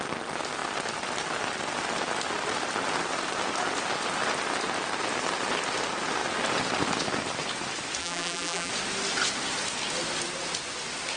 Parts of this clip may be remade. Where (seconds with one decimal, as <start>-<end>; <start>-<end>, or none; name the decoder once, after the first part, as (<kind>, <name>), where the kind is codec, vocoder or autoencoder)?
8.0-8.7 (vocoder, BigVGAN v2)